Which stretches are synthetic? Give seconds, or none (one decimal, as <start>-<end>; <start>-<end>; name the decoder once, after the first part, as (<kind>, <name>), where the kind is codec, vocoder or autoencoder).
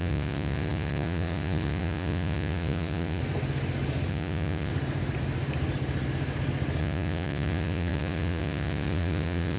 0.0-3.2 (vocoder, Vocos); 4.1-4.7; 6.8-9.6